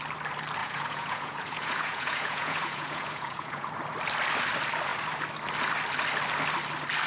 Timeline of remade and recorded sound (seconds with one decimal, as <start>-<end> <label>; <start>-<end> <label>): 0.0-0.6 recorded; 0.6-3.7 remade; 3.7-7.1 recorded